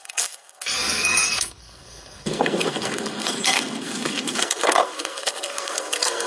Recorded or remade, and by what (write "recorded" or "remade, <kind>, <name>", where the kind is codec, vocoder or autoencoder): remade, codec, SNAC